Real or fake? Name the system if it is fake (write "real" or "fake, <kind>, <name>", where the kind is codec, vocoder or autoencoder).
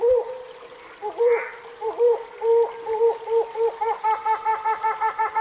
real